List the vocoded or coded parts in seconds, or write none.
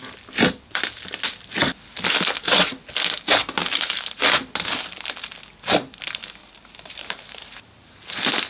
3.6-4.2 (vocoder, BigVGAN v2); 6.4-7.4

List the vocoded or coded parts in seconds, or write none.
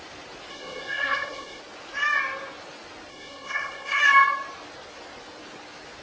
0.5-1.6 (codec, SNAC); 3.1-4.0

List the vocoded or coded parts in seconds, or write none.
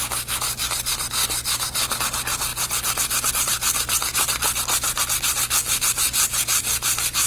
none